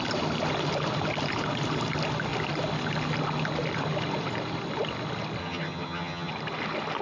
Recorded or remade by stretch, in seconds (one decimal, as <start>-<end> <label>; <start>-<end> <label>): 0.0-5.4 recorded; 5.4-6.3 remade; 6.3-7.0 recorded